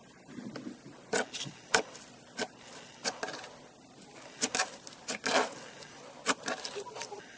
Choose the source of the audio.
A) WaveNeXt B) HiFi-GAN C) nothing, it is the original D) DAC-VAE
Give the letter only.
C